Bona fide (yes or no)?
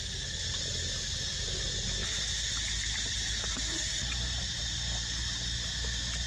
yes